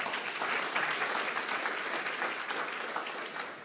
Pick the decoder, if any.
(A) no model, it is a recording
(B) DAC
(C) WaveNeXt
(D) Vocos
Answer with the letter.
A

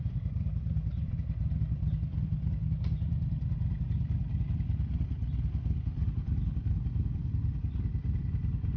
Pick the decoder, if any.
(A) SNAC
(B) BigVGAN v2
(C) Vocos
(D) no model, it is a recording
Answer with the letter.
B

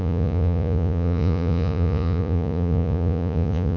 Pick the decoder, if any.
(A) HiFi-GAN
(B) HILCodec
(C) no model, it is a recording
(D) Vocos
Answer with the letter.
D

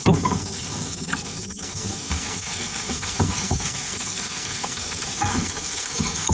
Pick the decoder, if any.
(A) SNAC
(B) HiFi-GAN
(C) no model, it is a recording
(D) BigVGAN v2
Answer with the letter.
A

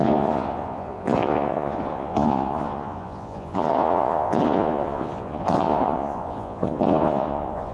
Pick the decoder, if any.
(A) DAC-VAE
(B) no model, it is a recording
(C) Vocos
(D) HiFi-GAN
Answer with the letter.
C